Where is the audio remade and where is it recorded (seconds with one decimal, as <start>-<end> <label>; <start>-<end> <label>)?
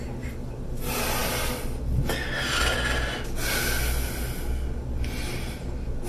0.0-6.1 recorded